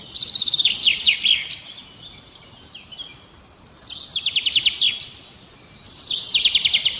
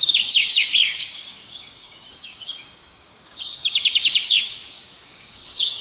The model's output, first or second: second